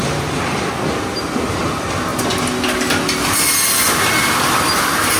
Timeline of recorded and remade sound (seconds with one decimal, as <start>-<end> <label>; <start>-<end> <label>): 0.0-0.7 remade; 0.7-5.2 recorded